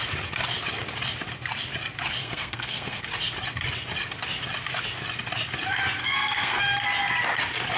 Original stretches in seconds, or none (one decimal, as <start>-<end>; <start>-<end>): 0.0-2.2; 3.0-6.0; 6.6-7.8